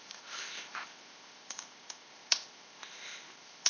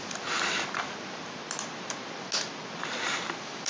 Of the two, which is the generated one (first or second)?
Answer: first